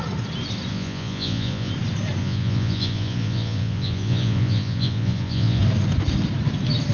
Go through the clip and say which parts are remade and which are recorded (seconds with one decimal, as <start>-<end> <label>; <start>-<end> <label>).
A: 0.0-0.7 recorded; 0.7-1.7 remade; 1.7-2.2 recorded; 2.2-5.6 remade; 5.6-6.9 recorded